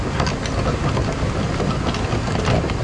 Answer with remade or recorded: recorded